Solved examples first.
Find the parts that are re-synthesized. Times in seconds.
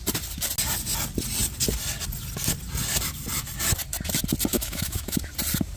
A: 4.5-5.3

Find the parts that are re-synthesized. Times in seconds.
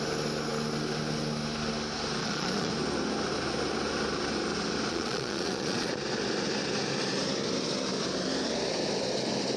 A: 2.2-2.7; 4.9-5.9